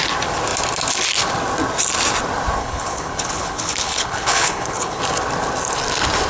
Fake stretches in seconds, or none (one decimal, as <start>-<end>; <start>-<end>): 2.6-5.0